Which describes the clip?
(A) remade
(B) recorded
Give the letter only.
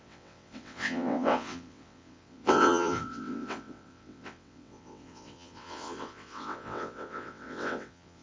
A